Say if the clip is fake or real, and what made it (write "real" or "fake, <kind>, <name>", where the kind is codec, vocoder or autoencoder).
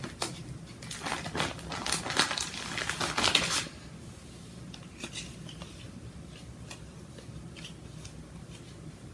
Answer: real